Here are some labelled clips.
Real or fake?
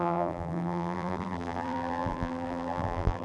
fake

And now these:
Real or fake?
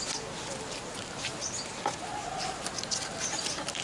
real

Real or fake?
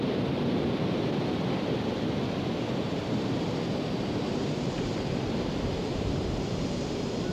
fake